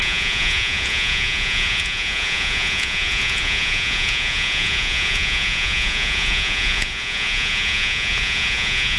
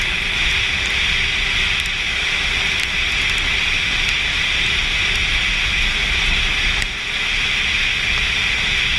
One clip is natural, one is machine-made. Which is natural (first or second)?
second